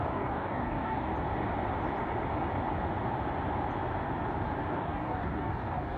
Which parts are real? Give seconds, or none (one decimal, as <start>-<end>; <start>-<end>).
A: 1.1-4.7